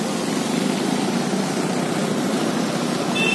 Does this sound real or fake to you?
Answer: real